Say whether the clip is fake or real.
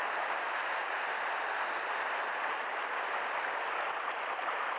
real